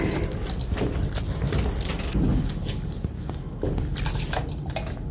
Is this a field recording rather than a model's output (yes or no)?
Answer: yes